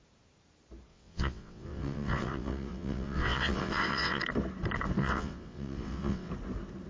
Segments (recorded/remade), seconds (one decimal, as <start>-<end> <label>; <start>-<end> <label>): 0.0-0.9 recorded; 0.9-4.2 remade; 4.2-5.0 recorded; 5.0-6.3 remade; 6.3-6.9 recorded